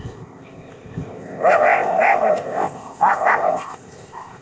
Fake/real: fake